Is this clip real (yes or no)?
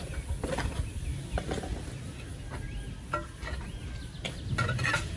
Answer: yes